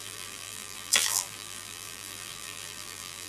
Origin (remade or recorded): remade